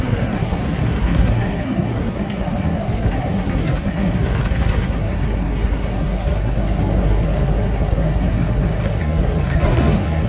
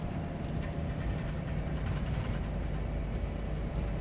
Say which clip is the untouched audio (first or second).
second